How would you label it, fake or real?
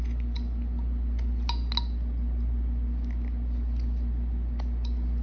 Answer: real